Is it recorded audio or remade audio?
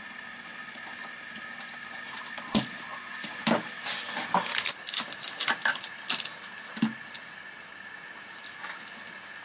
recorded